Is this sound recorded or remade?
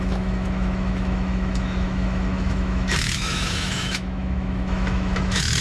remade